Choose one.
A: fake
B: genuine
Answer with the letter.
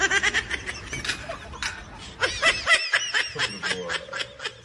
B